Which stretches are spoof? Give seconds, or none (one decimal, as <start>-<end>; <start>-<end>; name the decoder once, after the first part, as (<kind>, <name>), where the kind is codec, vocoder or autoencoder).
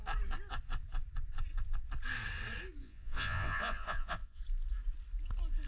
2.8-4.4 (vocoder, Vocos)